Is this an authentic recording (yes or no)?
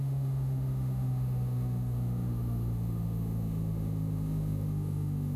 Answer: no